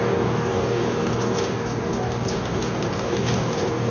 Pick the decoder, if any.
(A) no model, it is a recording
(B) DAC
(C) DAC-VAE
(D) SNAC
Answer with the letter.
B